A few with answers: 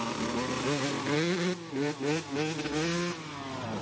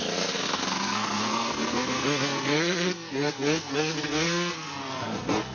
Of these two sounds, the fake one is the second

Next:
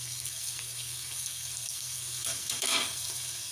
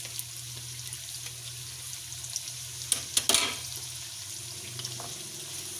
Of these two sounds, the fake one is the first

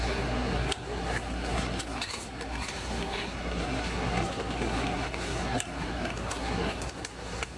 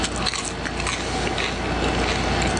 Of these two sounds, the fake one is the first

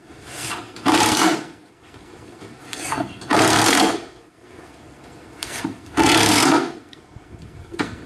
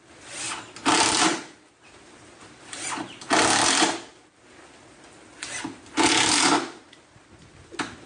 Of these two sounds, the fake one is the first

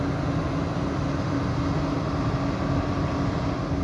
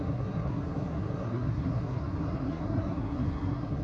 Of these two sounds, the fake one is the second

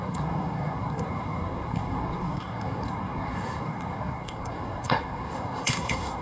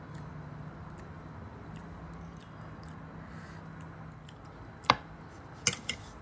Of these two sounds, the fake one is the first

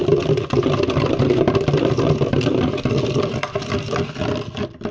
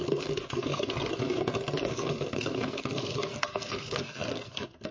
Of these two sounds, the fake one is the second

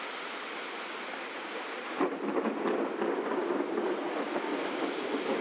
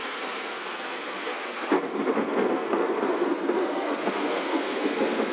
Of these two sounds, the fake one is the second